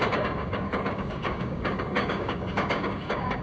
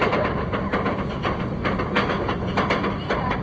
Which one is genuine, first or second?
second